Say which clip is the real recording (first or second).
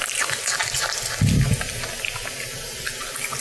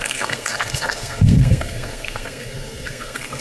first